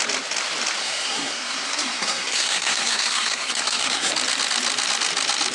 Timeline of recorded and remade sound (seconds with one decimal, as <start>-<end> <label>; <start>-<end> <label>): 0.0-0.8 recorded; 0.8-4.1 remade; 4.1-5.5 recorded